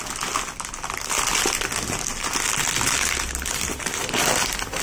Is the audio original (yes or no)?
yes